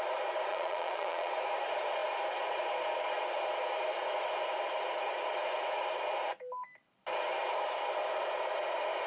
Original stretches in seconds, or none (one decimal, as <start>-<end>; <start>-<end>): 0.0-0.5; 1.3-9.1